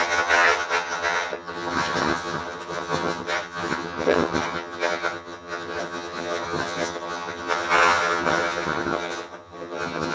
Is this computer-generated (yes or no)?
yes